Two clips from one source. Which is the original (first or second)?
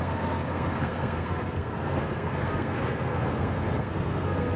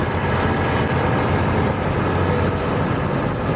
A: second